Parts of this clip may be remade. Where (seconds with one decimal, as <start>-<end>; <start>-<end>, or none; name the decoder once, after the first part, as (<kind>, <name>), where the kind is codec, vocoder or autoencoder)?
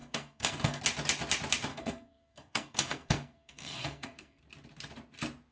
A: 0.0-0.8 (codec, SNAC); 1.7-4.4